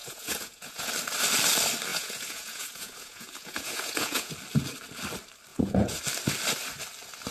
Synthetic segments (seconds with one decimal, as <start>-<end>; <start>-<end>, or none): 0.0-0.9; 1.9-4.3; 5.5-6.0